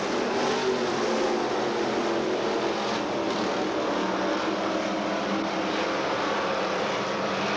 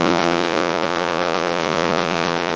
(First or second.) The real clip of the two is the first